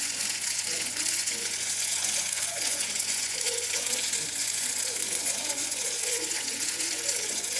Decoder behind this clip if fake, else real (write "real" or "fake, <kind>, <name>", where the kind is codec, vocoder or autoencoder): fake, vocoder, Vocos